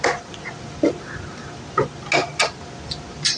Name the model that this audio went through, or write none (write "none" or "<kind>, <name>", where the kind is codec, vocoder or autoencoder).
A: none